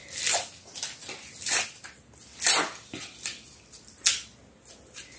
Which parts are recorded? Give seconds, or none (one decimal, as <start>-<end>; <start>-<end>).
0.0-5.2